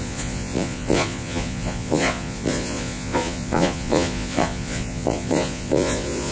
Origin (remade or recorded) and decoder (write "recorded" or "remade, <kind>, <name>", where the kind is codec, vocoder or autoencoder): remade, vocoder, Vocos